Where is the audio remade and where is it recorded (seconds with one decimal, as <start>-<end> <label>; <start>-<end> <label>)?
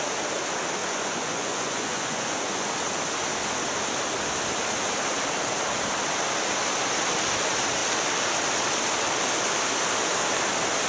0.0-0.8 recorded; 0.8-2.7 remade; 2.7-10.9 recorded